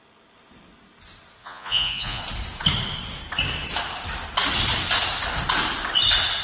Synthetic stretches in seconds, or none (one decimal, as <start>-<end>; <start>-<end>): 1.4-2.2